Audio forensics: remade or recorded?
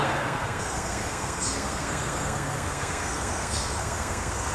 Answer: remade